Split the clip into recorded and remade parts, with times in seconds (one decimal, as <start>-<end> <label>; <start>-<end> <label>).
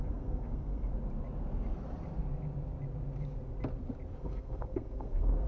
0.0-0.9 remade; 0.9-4.2 recorded; 4.2-5.5 remade